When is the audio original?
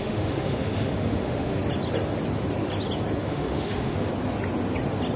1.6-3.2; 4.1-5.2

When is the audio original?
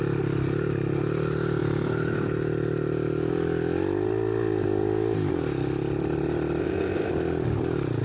0.0-6.6; 7.1-8.0